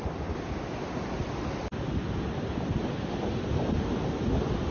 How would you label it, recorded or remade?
recorded